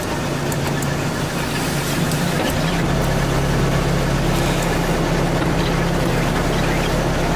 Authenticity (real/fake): real